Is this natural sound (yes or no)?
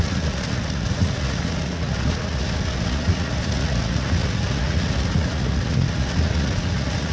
no